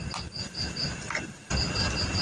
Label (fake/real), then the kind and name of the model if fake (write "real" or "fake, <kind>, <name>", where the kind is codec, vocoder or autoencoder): real